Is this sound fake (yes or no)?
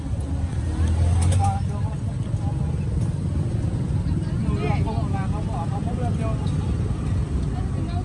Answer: no